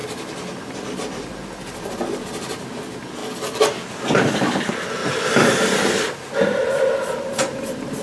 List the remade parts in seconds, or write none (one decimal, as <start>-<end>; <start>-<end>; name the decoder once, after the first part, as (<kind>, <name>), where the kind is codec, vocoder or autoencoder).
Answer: none